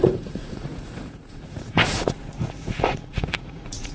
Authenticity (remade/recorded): remade